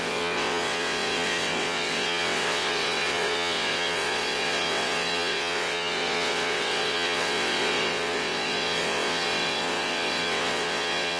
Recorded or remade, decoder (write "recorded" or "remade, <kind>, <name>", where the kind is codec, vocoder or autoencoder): remade, vocoder, WaveNeXt